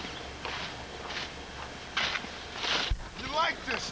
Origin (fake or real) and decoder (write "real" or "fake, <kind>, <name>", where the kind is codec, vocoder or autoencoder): real